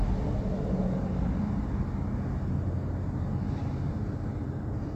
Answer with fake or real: real